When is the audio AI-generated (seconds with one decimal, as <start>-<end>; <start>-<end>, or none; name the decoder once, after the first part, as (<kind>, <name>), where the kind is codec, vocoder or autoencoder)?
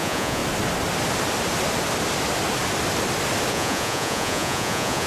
0.0-0.4 (vocoder, Vocos); 3.5-5.1